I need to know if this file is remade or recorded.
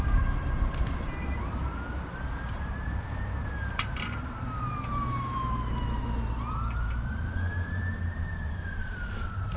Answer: remade